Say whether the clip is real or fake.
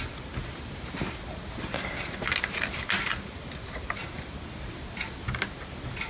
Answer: real